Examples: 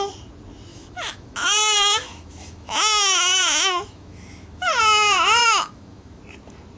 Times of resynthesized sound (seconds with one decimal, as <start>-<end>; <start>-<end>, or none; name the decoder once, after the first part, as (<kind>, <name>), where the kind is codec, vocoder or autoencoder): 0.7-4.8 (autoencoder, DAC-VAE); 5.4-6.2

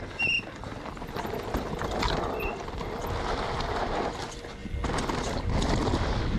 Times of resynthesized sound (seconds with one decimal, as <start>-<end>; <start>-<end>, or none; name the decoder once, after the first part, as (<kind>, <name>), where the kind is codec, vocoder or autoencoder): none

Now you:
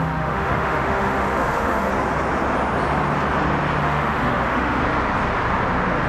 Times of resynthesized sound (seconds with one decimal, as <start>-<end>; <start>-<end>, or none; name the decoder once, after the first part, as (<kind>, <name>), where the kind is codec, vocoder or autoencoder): 0.0-1.9 (autoencoder, DAC-VAE); 3.8-4.8

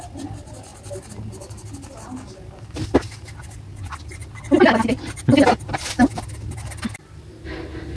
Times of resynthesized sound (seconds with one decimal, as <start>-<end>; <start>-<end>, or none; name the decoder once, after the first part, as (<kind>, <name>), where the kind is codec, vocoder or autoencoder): none

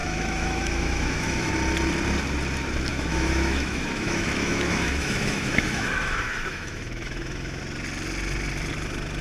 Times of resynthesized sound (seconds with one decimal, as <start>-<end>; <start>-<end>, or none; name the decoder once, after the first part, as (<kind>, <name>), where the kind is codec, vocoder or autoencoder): 0.0-1.5 (autoencoder, DAC-VAE); 2.9-7.6